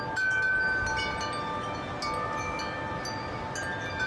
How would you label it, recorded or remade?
recorded